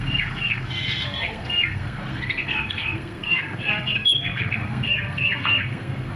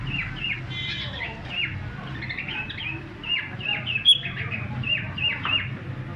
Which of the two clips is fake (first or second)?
first